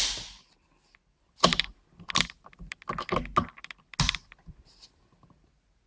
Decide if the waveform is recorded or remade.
recorded